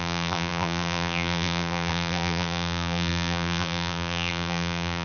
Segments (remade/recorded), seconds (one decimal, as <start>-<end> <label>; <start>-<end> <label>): 0.0-5.0 remade